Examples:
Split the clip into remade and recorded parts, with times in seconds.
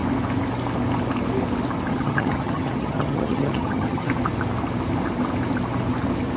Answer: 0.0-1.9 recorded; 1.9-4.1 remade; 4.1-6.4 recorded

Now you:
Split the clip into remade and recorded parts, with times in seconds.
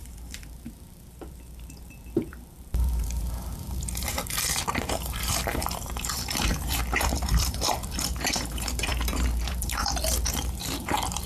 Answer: 0.0-11.3 remade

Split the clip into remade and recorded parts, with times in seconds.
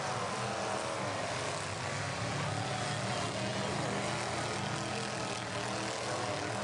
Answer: 0.0-6.6 recorded